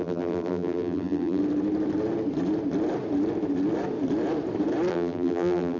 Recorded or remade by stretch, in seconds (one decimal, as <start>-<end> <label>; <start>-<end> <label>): 0.0-1.4 remade; 1.4-4.9 recorded; 4.9-5.8 remade